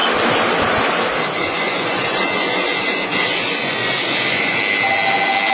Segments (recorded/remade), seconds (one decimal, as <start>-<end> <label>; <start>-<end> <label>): 0.0-1.4 recorded; 1.4-4.6 remade; 4.6-5.5 recorded